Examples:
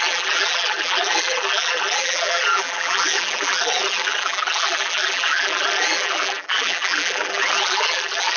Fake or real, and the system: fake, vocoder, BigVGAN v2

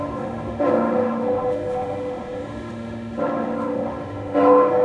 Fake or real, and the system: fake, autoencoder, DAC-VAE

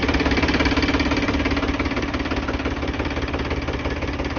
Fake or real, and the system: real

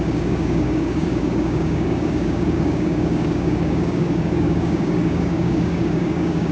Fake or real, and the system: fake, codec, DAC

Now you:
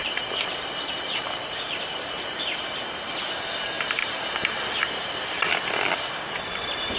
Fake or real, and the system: fake, vocoder, BigVGAN v2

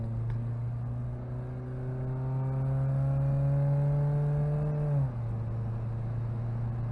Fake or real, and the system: real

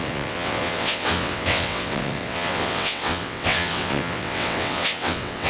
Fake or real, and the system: fake, vocoder, WaveNeXt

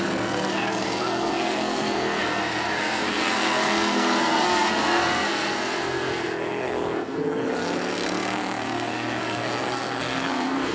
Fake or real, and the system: fake, codec, SNAC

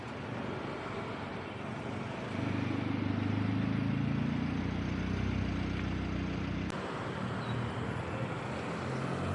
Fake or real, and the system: real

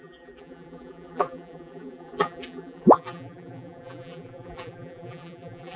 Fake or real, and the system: fake, vocoder, BigVGAN v2